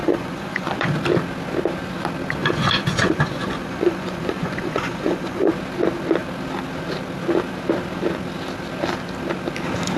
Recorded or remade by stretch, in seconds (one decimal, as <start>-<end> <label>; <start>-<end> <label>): 0.0-0.9 remade; 0.9-2.4 recorded; 2.4-5.5 remade; 5.5-10.0 recorded